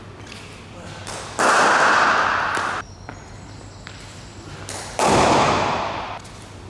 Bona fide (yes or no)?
yes